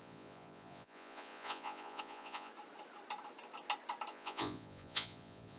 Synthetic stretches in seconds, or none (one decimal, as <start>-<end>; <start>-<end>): 0.0-2.5; 4.1-5.6